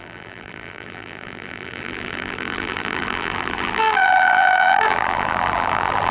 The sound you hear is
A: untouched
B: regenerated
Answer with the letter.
B